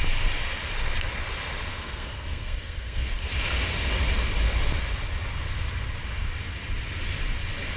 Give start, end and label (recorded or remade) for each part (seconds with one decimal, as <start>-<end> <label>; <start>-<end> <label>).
0.0-1.7 recorded; 1.7-3.2 remade; 3.2-7.8 recorded